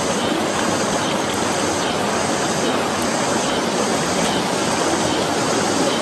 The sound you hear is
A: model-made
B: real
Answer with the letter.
B